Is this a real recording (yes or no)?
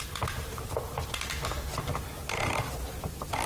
yes